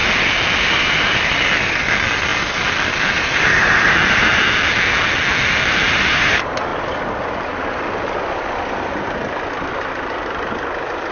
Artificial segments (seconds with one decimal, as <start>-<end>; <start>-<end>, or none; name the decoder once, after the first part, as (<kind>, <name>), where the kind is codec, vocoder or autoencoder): 6.7-11.1 (vocoder, BigVGAN v2)